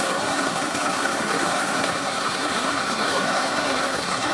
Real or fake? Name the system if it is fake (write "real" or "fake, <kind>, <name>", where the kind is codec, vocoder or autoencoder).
fake, codec, SNAC